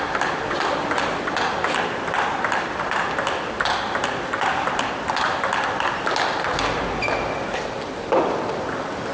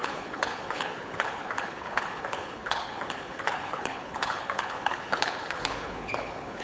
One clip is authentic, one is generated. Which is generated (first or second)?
second